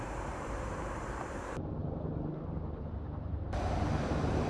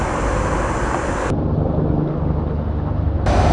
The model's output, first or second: first